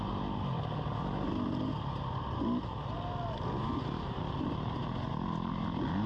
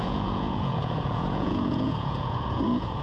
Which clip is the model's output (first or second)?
second